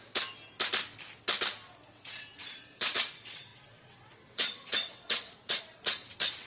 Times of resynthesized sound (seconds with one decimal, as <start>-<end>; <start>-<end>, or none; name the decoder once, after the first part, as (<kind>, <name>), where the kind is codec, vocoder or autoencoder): 1.9-6.5 (vocoder, WaveNeXt)